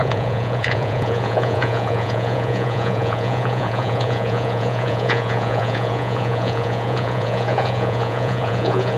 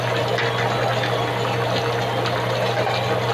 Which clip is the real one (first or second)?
second